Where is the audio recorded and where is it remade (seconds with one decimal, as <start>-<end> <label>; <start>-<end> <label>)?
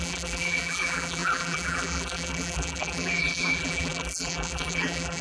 0.0-5.2 remade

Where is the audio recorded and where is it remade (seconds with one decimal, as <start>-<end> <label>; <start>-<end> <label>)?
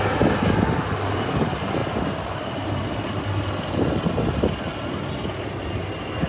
0.0-6.3 recorded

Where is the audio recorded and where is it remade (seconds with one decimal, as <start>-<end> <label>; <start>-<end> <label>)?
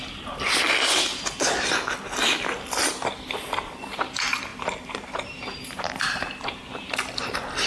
0.0-1.1 recorded; 1.1-1.7 remade; 1.7-4.5 recorded; 4.5-6.9 remade; 6.9-7.7 recorded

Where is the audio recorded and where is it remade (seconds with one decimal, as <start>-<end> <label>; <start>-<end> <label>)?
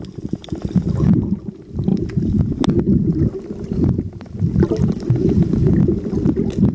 0.0-6.7 recorded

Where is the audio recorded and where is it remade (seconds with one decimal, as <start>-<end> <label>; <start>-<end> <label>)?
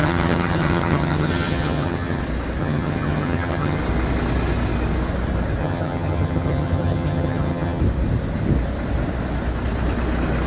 0.0-2.2 remade; 2.2-2.6 recorded; 2.6-3.8 remade; 3.8-5.6 recorded; 5.6-7.8 remade; 7.8-10.5 recorded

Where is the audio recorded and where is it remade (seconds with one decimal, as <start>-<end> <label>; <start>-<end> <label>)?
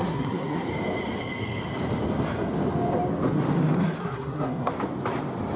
0.0-0.7 remade; 0.7-4.0 recorded; 4.0-4.7 remade; 4.7-5.6 recorded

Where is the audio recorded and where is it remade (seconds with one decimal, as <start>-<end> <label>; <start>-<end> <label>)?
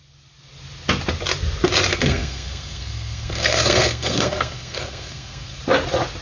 0.0-1.9 recorded; 1.9-5.6 remade; 5.6-6.2 recorded